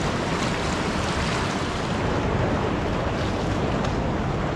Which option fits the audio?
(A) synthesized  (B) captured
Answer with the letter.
B